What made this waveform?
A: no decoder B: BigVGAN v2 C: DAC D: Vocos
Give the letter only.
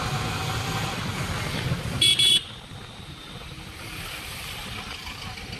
B